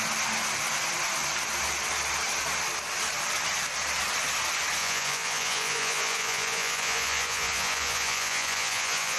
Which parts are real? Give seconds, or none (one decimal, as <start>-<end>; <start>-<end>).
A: 0.0-4.8